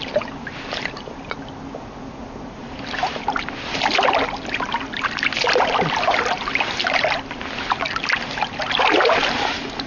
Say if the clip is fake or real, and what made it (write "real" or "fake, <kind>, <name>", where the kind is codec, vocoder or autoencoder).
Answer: real